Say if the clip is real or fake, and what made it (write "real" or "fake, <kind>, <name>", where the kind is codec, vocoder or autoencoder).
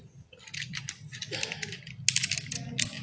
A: real